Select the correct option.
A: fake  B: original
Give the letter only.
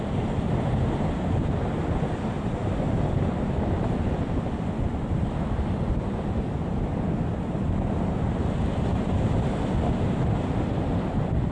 B